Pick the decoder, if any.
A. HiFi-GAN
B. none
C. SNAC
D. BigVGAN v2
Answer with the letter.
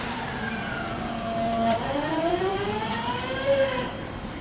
D